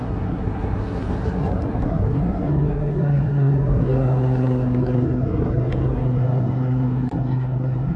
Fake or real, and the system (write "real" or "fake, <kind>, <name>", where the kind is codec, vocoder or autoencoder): fake, codec, SNAC